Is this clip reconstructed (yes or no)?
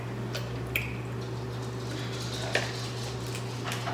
no